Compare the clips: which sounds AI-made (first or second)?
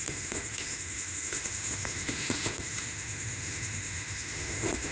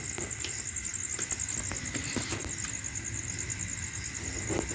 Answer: first